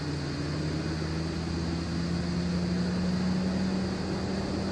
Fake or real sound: real